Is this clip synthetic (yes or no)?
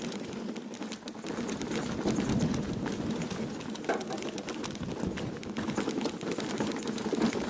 no